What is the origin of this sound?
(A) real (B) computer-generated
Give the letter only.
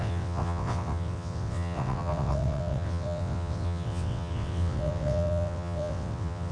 B